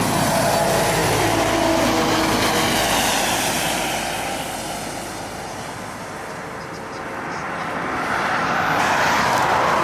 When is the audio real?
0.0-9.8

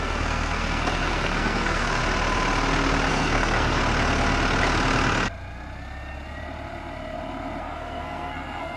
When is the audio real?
2.0-3.1; 3.8-7.6

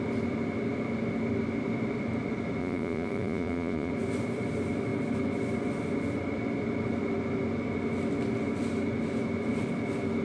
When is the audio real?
0.0-2.6; 3.9-10.2

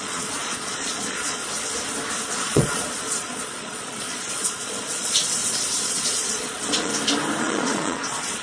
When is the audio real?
1.4-2.3; 5.4-5.9; 6.9-7.4